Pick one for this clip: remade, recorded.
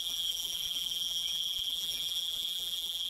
remade